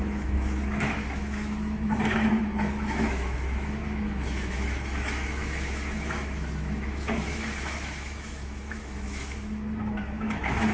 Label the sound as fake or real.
fake